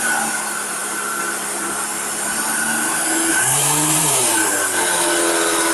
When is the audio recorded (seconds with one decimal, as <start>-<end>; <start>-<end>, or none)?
0.0-0.8; 2.4-3.3; 4.6-5.7

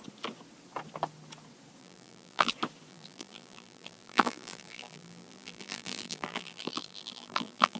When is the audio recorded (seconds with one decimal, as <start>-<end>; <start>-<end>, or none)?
0.0-1.8; 2.5-2.9